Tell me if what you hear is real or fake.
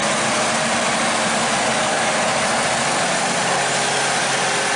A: real